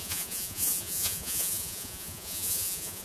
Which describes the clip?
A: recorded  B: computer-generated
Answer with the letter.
B